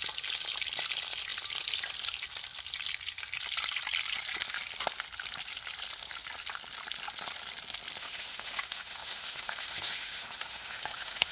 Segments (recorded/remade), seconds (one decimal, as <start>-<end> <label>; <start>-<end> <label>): 0.0-8.0 recorded; 8.0-11.3 remade